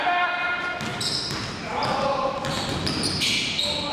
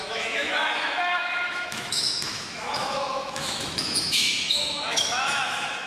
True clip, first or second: first